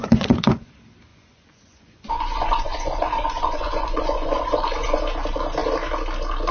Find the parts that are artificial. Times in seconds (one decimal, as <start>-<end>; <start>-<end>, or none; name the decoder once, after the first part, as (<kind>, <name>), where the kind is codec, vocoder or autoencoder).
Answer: 0.0-0.7 (vocoder, Vocos); 1.1-5.0

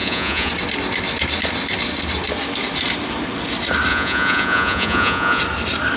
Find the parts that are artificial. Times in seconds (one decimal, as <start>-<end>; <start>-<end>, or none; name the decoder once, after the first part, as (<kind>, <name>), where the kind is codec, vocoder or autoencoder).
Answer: 0.0-0.5 (vocoder, Vocos); 3.9-5.4

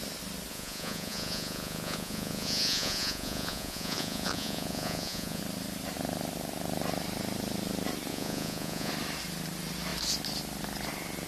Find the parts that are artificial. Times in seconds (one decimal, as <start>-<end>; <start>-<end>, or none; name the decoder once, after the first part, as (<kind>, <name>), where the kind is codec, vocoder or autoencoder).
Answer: 0.5-5.4 (vocoder, Vocos); 8.1-8.9